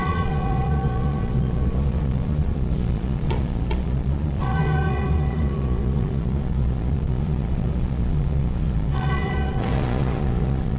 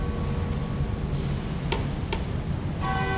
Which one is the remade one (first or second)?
first